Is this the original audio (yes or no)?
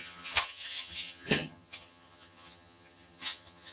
no